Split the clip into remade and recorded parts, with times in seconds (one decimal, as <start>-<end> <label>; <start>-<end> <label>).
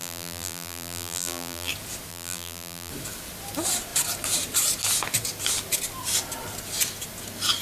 0.0-1.7 remade; 1.7-2.1 recorded; 2.1-2.9 remade; 2.9-7.6 recorded